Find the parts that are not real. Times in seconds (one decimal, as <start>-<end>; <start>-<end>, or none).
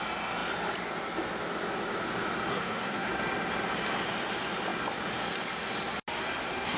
2.5-3.1